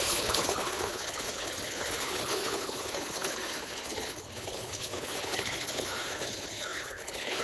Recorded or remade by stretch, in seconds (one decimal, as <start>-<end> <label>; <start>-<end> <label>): 0.0-7.4 remade